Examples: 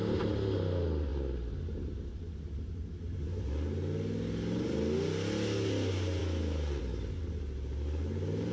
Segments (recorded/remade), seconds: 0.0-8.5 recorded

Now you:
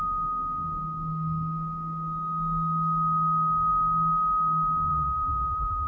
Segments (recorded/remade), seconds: 0.0-4.9 recorded; 4.9-5.9 remade